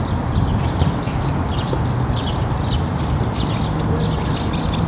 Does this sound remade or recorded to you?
recorded